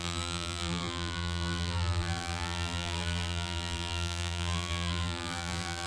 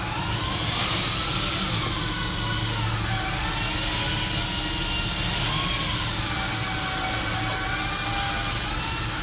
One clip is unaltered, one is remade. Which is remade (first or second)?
first